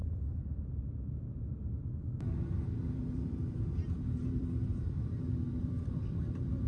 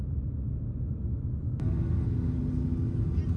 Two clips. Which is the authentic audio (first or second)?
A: second